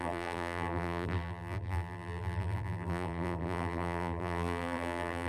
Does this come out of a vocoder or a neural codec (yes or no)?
yes